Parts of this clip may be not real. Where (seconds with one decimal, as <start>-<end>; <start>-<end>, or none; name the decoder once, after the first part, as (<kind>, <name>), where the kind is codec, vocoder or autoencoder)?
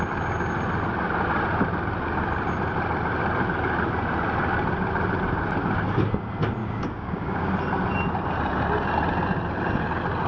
6.6-7.5 (codec, DAC)